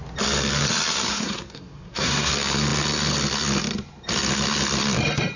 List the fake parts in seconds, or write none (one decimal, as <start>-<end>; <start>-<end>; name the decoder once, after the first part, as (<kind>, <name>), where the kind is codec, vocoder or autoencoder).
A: 1.1-2.3 (codec, SNAC)